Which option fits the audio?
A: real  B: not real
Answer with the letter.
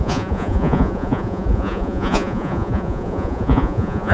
B